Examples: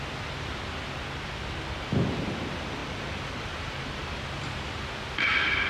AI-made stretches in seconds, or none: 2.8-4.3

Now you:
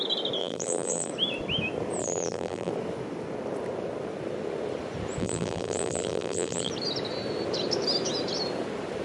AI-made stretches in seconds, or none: 0.4-1.1; 2.0-2.7; 5.2-6.7

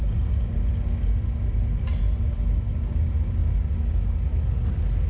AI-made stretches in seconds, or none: none

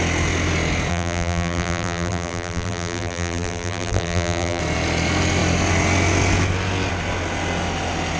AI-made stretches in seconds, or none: 0.9-4.6

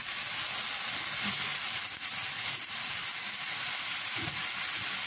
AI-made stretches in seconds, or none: 1.5-4.6

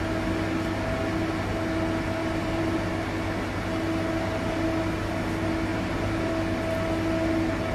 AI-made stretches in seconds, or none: 2.2-2.9; 5.7-6.3

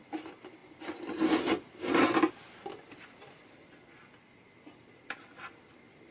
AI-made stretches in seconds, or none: 3.2-5.3

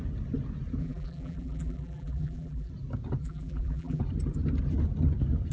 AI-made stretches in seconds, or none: 0.8-2.7; 3.2-4.0